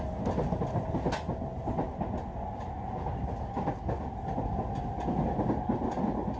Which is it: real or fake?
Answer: real